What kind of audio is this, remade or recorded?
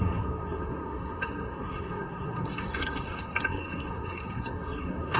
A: remade